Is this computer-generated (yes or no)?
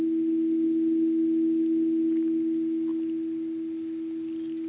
no